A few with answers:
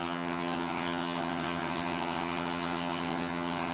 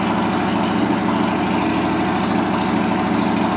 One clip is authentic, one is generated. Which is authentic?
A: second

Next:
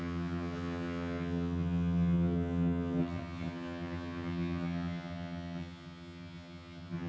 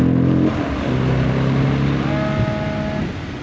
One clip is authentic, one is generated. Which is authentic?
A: second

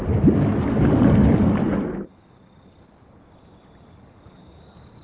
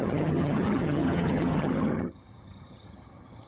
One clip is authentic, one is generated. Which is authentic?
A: first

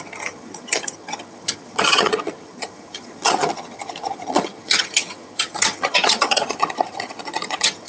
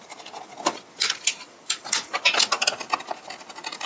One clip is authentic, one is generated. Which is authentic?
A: second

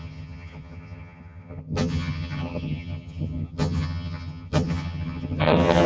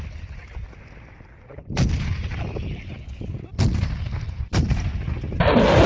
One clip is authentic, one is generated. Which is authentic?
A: second